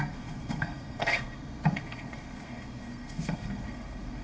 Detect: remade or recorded remade